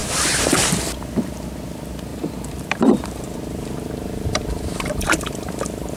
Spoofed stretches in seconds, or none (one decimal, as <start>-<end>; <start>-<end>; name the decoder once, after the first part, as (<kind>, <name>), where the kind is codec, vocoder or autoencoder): 0.0-0.9 (vocoder, BigVGAN v2); 2.1-6.0